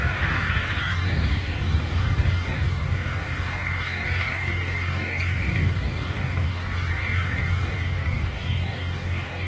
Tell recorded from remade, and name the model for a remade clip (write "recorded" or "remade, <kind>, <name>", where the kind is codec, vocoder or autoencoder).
remade, codec, DAC